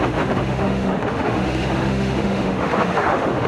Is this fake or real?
fake